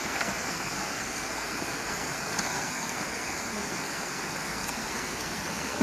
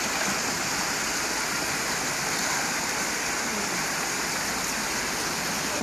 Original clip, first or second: second